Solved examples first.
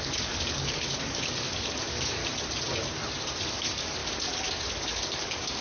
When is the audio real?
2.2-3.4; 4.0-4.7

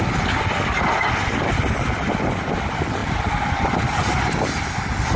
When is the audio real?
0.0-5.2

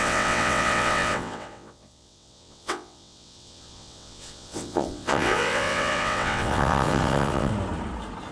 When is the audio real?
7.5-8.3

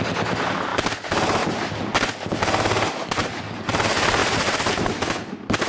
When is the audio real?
0.0-3.2; 3.8-4.2; 4.8-5.7

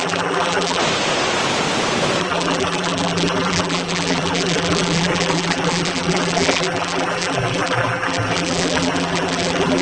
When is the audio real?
0.8-2.2

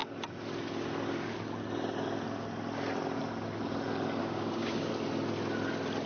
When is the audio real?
0.0-4.2; 4.9-6.1